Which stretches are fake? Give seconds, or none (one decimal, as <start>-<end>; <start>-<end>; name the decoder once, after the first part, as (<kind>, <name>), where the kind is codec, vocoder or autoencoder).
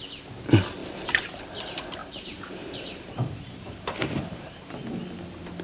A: 0.8-1.4 (vocoder, BigVGAN v2); 2.0-4.6